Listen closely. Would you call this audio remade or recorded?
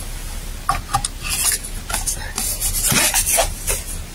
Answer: recorded